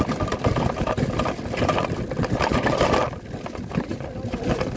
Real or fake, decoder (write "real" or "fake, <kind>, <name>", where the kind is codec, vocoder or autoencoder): real